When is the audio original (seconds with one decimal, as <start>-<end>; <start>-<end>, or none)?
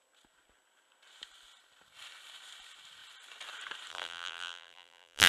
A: 0.0-3.9